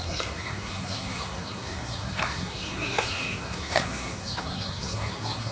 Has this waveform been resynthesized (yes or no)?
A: yes